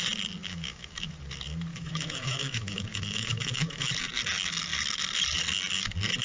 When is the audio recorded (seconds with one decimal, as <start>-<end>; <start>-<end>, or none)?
0.0-0.4; 1.1-1.7; 3.9-6.2